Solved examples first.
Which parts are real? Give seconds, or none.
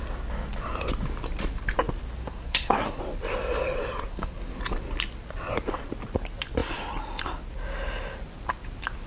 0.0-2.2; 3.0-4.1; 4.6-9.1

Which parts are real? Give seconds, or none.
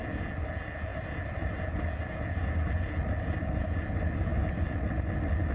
0.0-0.9; 2.0-5.5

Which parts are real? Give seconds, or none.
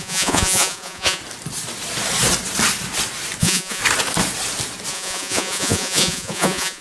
1.2-3.4; 3.8-4.9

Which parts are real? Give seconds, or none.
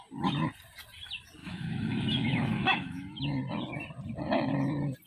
0.0-1.4; 3.2-5.1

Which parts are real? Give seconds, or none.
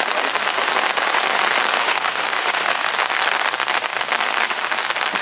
0.0-1.8; 2.9-5.2